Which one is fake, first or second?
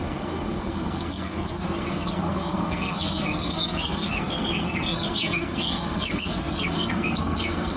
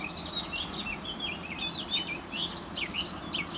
first